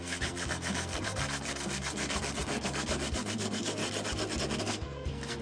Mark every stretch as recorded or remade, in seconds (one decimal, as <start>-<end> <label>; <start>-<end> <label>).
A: 0.0-3.8 remade; 3.8-4.6 recorded; 4.6-5.4 remade